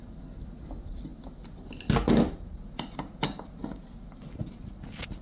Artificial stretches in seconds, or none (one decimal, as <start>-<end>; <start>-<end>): none